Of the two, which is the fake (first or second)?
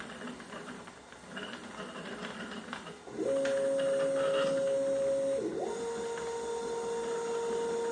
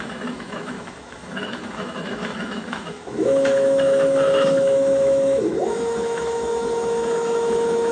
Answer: second